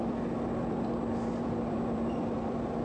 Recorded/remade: remade